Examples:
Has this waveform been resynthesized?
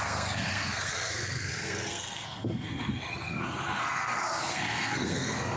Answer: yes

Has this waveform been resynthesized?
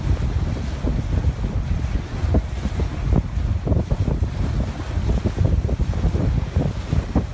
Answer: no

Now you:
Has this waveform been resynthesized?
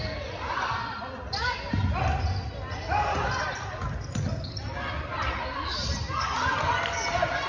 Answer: no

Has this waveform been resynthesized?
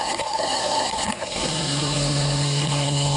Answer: yes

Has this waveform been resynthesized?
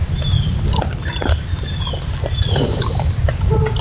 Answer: no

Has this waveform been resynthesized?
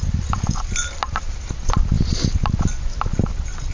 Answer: no